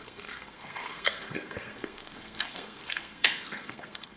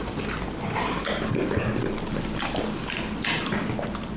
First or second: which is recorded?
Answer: second